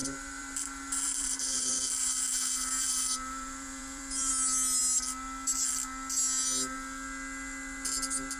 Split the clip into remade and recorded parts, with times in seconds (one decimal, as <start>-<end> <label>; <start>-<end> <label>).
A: 0.0-4.3 remade; 4.3-8.4 recorded

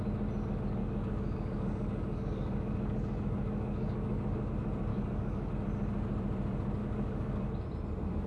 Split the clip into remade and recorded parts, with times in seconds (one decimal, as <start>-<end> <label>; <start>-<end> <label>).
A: 0.0-0.8 recorded; 0.8-4.5 remade; 4.5-4.9 recorded; 4.9-5.5 remade; 5.5-6.8 recorded; 6.8-7.5 remade; 7.5-8.3 recorded

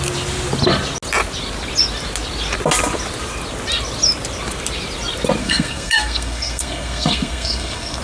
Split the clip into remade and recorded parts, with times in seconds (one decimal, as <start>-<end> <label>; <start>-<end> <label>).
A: 0.0-5.4 recorded; 5.4-8.0 remade

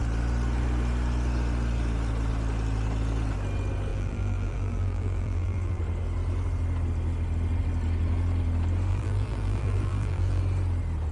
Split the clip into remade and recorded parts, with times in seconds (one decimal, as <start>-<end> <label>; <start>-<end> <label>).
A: 0.0-3.9 recorded; 3.9-5.8 remade; 5.8-8.9 recorded; 8.9-10.4 remade; 10.4-11.1 recorded

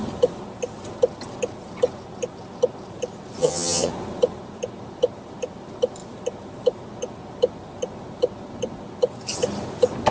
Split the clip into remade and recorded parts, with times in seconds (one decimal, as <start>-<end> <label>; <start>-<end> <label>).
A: 0.0-3.4 recorded; 3.4-3.9 remade; 3.9-10.1 recorded

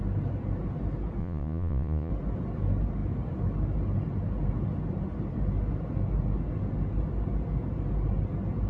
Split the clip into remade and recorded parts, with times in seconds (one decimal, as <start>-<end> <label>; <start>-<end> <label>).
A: 0.0-1.2 recorded; 1.2-2.1 remade; 2.1-8.7 recorded